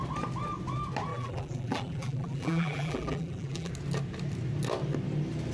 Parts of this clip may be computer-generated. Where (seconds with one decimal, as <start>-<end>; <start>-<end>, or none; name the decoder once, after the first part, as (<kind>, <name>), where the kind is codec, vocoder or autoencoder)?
1.1-3.7 (vocoder, BigVGAN v2)